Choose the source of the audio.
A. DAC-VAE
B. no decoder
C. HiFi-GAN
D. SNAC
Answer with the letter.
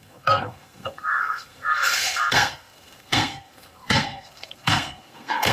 D